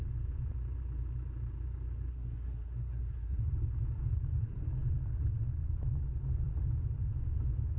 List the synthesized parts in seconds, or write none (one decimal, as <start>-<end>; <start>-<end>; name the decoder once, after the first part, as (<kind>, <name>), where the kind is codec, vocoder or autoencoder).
2.1-3.5 (codec, SNAC)